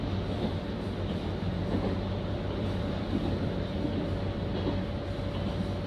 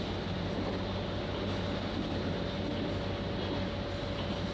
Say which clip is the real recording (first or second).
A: second